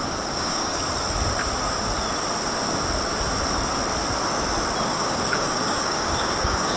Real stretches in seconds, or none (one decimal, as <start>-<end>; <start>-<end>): 0.8-4.9